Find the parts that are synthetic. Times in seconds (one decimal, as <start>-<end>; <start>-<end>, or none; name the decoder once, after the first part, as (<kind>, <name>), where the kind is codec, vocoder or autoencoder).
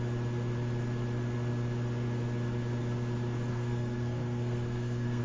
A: 3.5-5.2 (codec, SNAC)